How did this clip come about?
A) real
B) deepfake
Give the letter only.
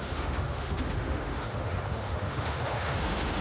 B